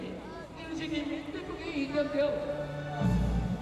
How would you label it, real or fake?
real